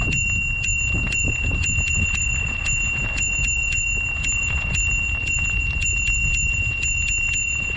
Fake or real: real